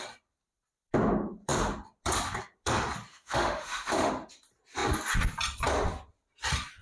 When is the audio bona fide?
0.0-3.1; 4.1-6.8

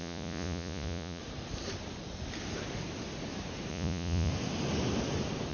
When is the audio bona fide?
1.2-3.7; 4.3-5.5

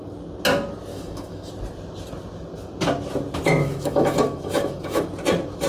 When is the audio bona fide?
0.0-0.9; 1.5-3.6; 5.0-5.7